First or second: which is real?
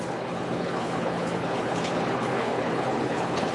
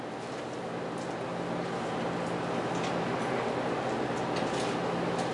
second